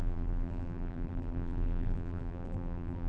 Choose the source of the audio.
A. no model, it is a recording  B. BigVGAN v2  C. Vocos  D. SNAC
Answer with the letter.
B